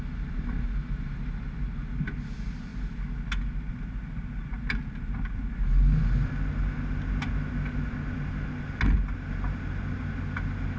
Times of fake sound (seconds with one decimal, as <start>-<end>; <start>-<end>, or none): none